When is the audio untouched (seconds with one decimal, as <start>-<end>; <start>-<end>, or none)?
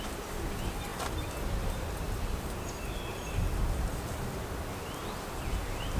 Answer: 0.0-6.0